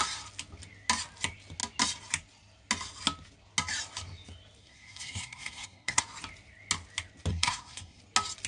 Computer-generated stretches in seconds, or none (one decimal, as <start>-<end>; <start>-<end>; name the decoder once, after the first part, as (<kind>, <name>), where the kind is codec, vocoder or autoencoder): 4.6-6.0 (codec, SNAC); 7.3-8.0